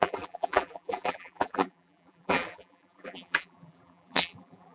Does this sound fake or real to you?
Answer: fake